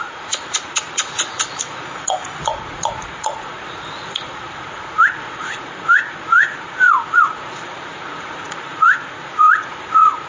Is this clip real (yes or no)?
no